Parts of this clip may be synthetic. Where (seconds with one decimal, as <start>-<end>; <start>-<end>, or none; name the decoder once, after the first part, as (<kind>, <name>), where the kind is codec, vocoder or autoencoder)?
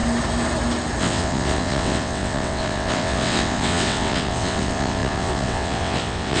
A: 1.0-6.4 (vocoder, WaveNeXt)